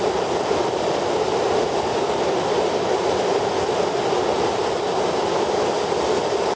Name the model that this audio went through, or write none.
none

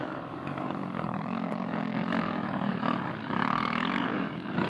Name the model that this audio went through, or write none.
codec, DAC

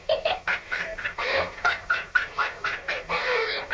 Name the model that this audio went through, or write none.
codec, DAC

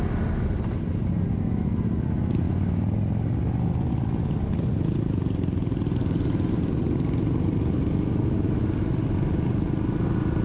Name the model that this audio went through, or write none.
none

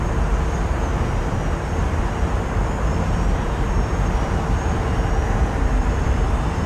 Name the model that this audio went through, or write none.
none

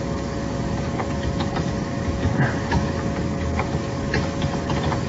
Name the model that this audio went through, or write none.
codec, DAC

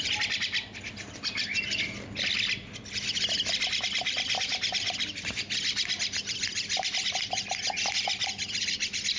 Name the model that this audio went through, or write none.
none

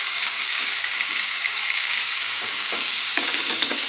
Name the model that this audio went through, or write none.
codec, DAC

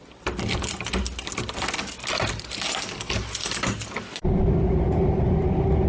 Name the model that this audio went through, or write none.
none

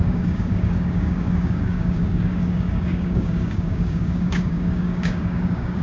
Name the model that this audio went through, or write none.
codec, DAC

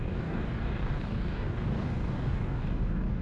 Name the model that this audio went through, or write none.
codec, DAC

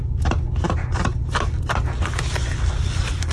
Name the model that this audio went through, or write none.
none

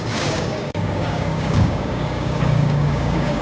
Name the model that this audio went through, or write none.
codec, DAC